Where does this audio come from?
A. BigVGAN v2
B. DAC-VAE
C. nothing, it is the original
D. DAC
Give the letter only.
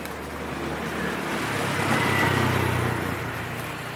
C